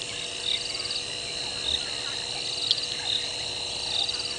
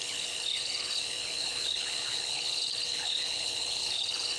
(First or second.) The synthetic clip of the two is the second